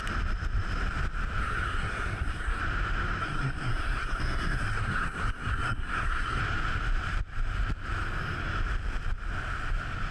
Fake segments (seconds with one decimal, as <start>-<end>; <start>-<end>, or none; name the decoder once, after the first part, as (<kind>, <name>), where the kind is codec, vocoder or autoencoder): 1.4-2.6 (codec, SNAC); 3.2-6.4